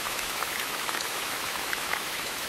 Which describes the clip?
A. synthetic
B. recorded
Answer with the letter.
A